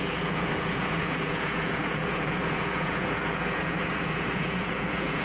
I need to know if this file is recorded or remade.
remade